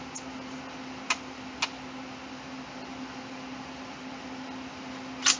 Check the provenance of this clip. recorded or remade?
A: recorded